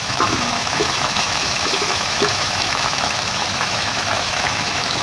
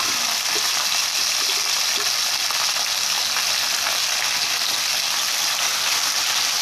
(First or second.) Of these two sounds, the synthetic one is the first